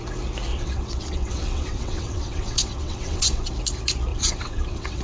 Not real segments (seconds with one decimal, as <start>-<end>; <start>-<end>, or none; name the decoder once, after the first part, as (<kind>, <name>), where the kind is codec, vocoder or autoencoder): 0.5-3.5 (vocoder, WaveNeXt); 4.1-5.0